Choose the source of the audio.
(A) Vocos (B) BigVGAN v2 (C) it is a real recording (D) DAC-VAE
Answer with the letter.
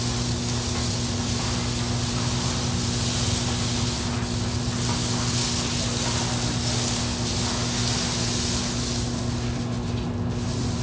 C